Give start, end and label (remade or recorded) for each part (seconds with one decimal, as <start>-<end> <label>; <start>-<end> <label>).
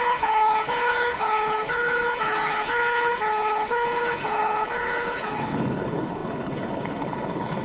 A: 0.0-7.6 remade